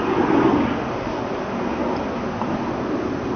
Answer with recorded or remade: recorded